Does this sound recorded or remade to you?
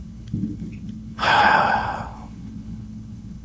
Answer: remade